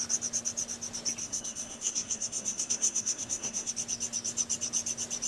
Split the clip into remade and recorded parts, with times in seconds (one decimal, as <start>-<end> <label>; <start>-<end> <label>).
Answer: 0.0-1.2 recorded; 1.2-3.7 remade; 3.7-5.3 recorded